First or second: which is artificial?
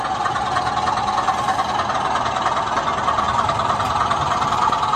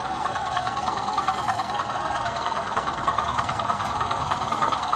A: second